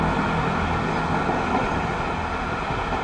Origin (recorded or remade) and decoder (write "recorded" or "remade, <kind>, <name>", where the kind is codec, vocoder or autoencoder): recorded